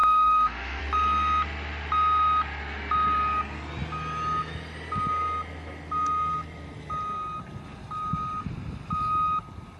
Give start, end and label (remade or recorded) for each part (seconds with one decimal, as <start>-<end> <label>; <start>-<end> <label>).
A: 0.0-0.8 remade; 0.8-9.8 recorded